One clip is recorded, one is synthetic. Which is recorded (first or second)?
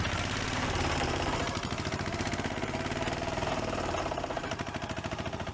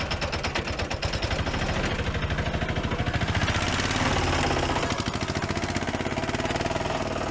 second